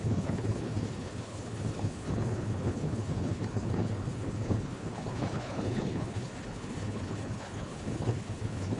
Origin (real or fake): fake